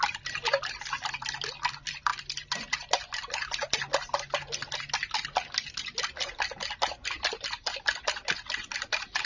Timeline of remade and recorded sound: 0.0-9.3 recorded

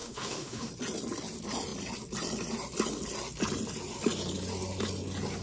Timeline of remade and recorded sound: 0.0-0.7 remade; 0.7-5.4 recorded

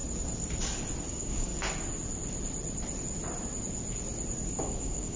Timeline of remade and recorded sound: 0.0-1.1 recorded; 1.1-1.5 remade; 1.5-4.6 recorded; 4.6-5.2 remade

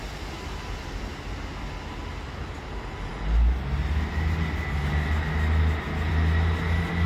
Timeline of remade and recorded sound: 0.0-7.1 recorded

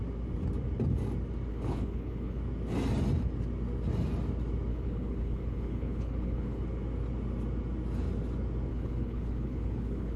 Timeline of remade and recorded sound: 0.0-1.5 recorded; 1.5-2.4 remade; 2.4-4.7 recorded; 4.7-6.6 remade; 6.6-8.7 recorded; 8.7-10.2 remade

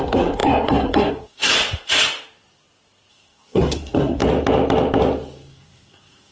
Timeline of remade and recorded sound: 0.0-1.5 remade; 1.5-3.1 recorded; 3.1-4.2 remade; 4.2-5.5 recorded; 5.5-6.3 remade

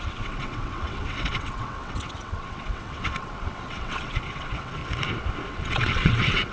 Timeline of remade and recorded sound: 0.0-4.8 remade; 4.8-5.5 recorded; 5.5-6.5 remade

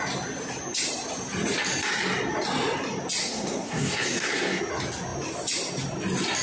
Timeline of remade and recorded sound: 0.0-3.2 recorded; 3.2-4.6 remade; 4.6-6.4 recorded